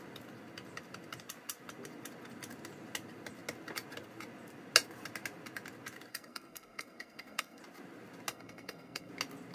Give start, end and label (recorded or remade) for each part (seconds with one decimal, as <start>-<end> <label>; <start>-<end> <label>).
0.0-6.1 recorded; 6.1-7.6 remade; 7.6-8.3 recorded; 8.3-9.1 remade; 9.1-9.5 recorded